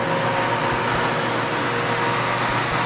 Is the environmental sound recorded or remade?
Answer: recorded